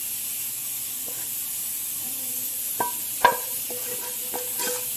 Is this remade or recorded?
recorded